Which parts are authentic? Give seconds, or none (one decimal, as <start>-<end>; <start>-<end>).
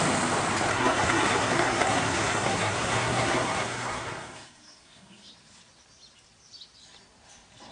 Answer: 0.0-0.7; 5.3-7.7